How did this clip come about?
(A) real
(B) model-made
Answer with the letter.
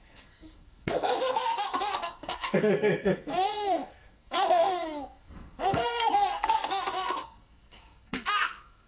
B